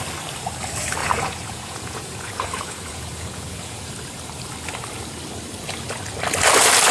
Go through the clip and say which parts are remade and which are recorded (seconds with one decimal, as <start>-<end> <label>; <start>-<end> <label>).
0.0-1.0 recorded; 1.0-3.9 remade; 3.9-6.9 recorded